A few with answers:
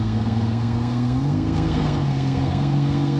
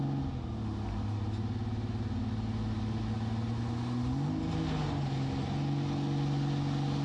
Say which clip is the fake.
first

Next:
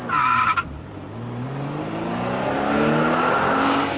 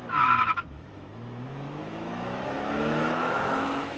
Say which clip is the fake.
second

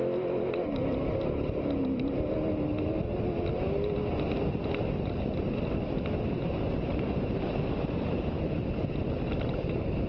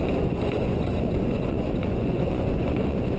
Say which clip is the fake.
second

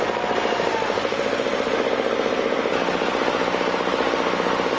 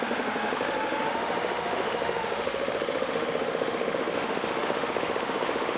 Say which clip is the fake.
second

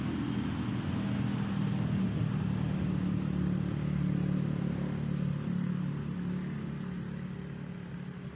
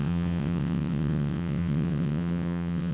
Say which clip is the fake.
second